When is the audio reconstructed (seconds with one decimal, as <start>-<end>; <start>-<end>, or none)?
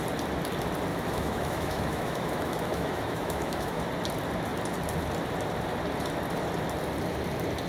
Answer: 0.9-3.8